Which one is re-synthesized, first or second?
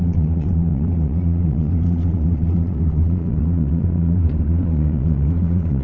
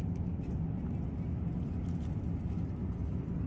first